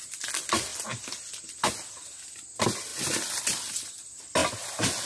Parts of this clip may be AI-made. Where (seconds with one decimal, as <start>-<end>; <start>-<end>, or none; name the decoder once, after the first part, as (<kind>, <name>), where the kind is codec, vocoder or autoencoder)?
none